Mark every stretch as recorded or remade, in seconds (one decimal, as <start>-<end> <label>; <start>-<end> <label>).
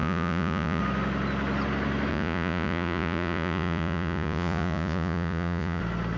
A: 0.0-0.8 remade; 0.8-2.1 recorded; 2.1-5.8 remade; 5.8-6.2 recorded